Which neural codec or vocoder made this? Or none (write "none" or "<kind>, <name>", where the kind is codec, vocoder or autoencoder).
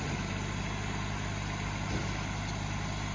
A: none